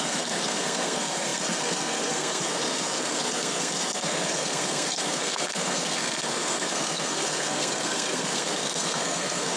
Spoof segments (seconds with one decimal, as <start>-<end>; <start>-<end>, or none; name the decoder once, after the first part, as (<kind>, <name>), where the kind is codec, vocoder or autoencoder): 0.0-9.6 (codec, SNAC)